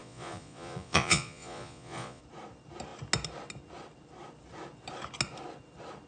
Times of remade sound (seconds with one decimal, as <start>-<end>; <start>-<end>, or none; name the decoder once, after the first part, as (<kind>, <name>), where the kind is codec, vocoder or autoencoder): 0.0-2.2 (vocoder, Vocos)